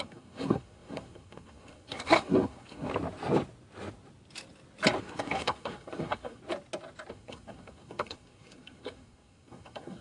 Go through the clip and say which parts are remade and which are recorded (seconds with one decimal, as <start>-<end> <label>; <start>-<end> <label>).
0.0-2.9 remade; 2.9-5.0 recorded; 5.0-6.4 remade; 6.4-7.1 recorded; 7.1-10.0 remade